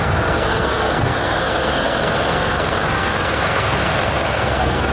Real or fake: fake